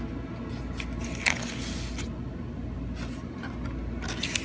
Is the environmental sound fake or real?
real